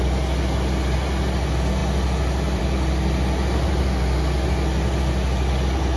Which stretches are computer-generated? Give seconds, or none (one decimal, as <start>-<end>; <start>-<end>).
none

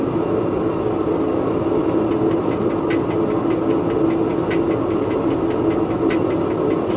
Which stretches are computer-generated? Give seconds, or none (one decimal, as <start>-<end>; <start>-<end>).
none

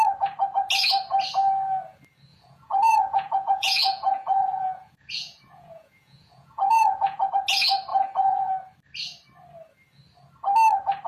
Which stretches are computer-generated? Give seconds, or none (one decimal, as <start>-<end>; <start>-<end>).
2.3-7.3; 7.9-8.5

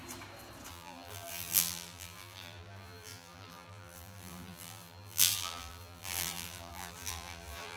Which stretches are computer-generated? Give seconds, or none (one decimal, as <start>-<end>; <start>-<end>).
0.7-7.8